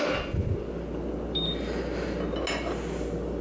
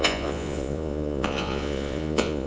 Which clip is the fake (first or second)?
second